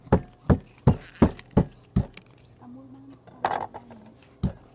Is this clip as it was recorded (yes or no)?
yes